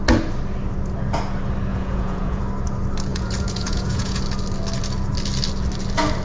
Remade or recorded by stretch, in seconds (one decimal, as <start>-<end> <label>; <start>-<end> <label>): 0.0-1.7 recorded; 1.7-2.4 remade; 2.4-3.1 recorded; 3.1-4.2 remade; 4.2-6.2 recorded